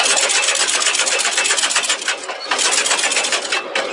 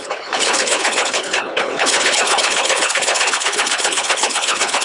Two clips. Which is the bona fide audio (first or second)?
first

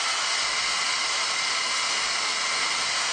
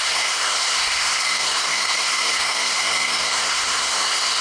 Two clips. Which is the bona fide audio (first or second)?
first